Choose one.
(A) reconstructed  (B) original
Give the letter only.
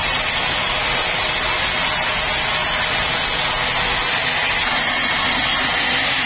B